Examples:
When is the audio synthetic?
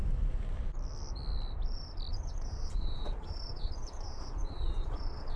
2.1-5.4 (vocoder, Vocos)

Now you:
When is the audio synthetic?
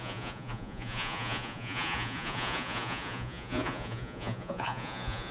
0.0-5.3 (vocoder, Vocos)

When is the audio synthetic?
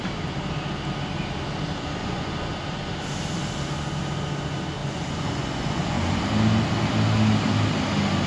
2.0-2.5 (vocoder, Vocos); 4.8-6.2